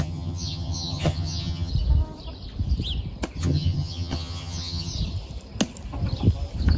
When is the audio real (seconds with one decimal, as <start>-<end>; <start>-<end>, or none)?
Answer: 1.7-3.4; 4.9-6.8